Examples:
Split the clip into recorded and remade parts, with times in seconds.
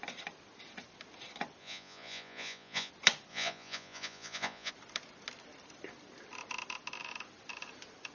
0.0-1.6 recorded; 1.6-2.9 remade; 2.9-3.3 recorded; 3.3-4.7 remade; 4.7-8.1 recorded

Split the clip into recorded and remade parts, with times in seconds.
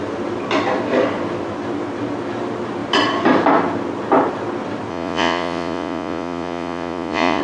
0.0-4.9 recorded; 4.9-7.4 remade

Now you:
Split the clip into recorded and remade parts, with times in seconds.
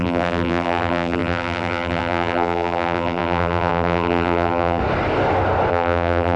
0.0-4.8 remade; 4.8-5.7 recorded; 5.7-6.4 remade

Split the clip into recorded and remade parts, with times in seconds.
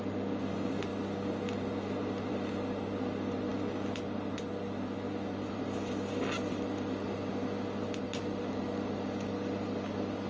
0.0-10.3 recorded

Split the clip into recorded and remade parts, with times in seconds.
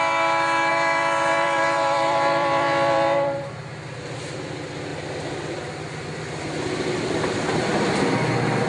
0.0-0.7 recorded; 0.7-3.6 remade; 3.6-8.7 recorded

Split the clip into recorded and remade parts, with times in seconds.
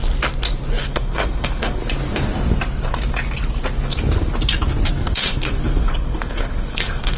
0.0-0.8 recorded; 0.8-1.8 remade; 1.8-4.9 recorded; 4.9-7.2 remade